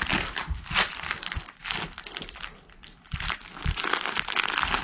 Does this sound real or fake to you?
real